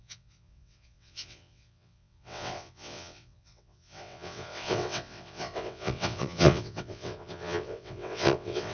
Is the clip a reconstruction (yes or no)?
yes